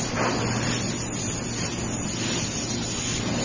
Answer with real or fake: real